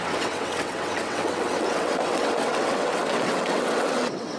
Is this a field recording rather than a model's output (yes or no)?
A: no